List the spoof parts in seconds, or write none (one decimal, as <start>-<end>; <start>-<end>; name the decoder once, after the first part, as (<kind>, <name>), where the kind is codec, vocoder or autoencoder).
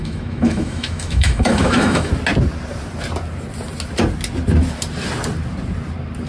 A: 0.0-2.1 (autoencoder, DAC-VAE)